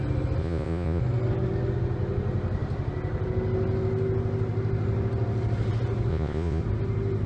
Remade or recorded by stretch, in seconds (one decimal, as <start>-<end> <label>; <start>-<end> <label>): 0.0-0.4 recorded; 0.4-1.0 remade; 1.0-6.1 recorded; 6.1-6.6 remade; 6.6-7.3 recorded